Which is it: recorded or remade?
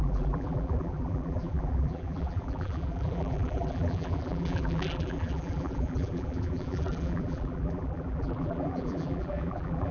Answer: remade